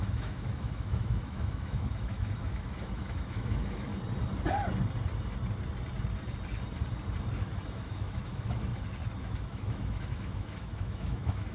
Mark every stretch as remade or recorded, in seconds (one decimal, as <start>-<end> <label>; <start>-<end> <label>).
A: 0.0-3.9 remade; 3.9-7.7 recorded; 7.7-8.7 remade; 8.7-9.2 recorded; 9.2-11.5 remade